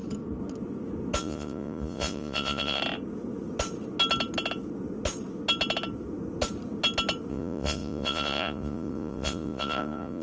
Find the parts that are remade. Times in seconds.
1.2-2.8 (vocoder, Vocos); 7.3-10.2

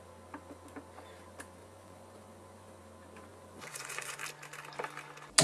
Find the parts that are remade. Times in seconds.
1.6-2.8 (vocoder, Vocos); 3.3-4.2